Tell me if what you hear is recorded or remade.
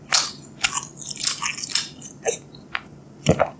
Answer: recorded